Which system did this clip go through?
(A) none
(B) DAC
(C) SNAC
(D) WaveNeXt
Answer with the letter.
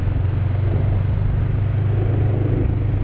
A